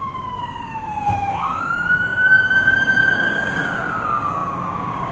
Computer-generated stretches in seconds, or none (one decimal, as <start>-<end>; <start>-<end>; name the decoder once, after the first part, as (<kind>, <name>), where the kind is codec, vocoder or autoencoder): 0.0-5.1 (codec, DAC)